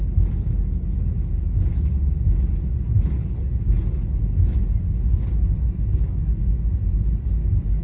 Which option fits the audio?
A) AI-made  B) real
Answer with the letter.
B